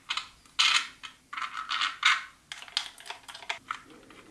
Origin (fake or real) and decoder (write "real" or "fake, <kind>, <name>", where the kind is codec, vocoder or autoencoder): real